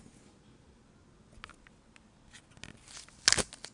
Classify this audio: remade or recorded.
recorded